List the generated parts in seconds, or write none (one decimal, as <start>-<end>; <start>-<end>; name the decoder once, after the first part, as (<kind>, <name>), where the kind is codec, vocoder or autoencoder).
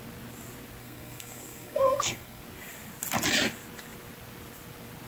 0.8-2.4 (codec, SNAC)